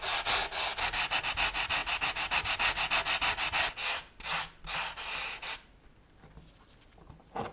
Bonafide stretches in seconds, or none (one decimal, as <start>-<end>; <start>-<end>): 0.0-7.5